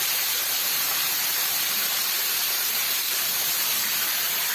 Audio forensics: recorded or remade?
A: remade